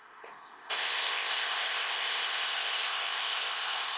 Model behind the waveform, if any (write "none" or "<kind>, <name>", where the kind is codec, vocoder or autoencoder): codec, ZipCodec